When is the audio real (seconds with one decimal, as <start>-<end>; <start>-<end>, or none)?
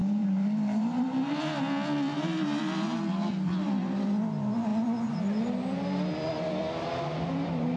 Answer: 1.6-2.1; 3.0-7.8